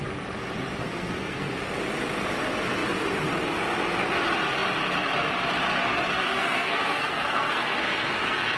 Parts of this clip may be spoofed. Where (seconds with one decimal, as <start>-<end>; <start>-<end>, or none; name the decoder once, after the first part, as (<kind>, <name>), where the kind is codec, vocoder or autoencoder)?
0.8-1.5 (codec, SNAC); 5.8-8.6